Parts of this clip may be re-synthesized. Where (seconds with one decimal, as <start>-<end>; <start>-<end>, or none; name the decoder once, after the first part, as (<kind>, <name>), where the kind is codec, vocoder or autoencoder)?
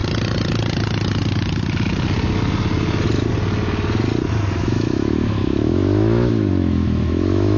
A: 4.6-7.6 (autoencoder, DAC-VAE)